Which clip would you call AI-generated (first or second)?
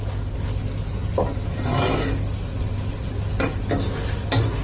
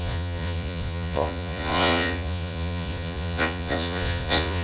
second